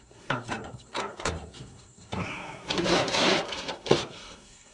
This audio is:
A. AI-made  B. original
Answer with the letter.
A